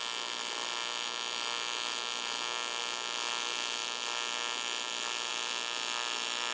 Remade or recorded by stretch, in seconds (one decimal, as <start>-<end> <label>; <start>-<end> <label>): 0.0-6.5 recorded